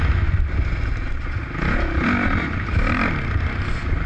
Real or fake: real